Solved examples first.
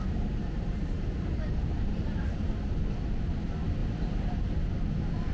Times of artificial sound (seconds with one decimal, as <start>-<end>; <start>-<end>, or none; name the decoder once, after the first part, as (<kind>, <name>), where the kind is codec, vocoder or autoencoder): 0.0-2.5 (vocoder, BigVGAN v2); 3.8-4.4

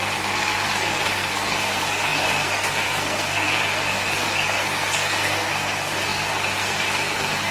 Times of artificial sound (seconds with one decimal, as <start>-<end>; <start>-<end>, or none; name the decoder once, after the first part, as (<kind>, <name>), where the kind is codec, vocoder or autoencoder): 0.0-7.5 (codec, SNAC)

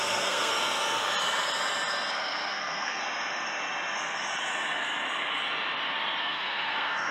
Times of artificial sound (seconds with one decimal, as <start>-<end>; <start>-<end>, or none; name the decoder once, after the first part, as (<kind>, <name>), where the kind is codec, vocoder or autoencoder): 0.0-0.5 (codec, SNAC); 2.1-3.0; 6.2-7.1

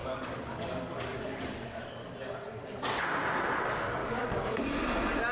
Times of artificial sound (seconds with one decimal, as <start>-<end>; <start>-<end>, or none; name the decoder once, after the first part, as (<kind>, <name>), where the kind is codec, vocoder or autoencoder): 0.0-2.1 (codec, DAC); 4.0-4.6

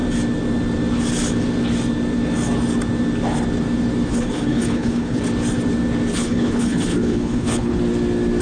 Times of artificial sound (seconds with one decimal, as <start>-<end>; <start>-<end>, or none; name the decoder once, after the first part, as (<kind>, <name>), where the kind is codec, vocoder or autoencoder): 4.1-5.2 (codec, HILCodec); 6.1-7.8

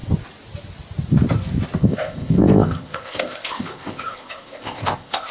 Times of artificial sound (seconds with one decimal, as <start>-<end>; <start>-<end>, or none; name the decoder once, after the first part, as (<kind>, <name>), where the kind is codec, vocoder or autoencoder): 1.8-5.3 (codec, ZipCodec)

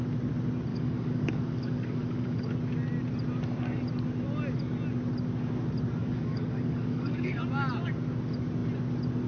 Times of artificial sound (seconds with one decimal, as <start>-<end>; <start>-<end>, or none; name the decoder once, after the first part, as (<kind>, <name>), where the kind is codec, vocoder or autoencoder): 0.7-2.5 (codec, DAC); 6.0-7.4